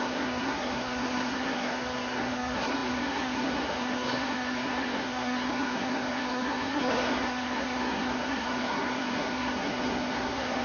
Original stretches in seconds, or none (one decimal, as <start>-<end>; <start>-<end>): none